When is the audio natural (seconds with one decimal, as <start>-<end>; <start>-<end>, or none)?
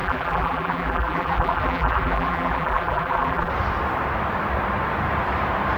3.5-5.8